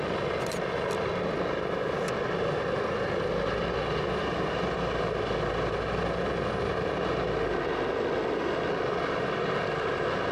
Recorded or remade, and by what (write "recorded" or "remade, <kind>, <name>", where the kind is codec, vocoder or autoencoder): recorded